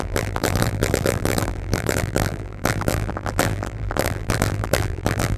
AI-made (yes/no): yes